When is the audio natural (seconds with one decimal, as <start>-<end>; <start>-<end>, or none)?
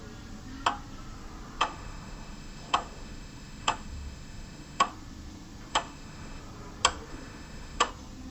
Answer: 0.0-1.6; 4.9-5.7; 6.4-7.1; 7.9-8.3